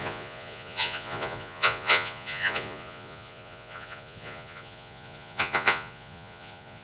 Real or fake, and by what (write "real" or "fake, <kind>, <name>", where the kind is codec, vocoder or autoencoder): fake, vocoder, Vocos